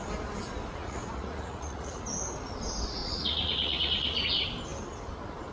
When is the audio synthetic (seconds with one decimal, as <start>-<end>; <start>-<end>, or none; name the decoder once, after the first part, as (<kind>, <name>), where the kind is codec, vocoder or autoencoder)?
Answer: 0.8-2.0 (vocoder, Vocos); 3.0-4.3